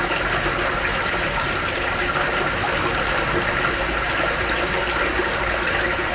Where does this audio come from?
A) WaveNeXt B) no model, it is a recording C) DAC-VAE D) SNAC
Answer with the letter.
B